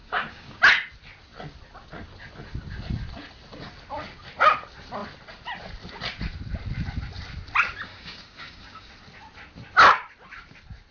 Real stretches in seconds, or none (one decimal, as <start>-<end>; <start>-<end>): 0.6-7.9; 8.9-10.9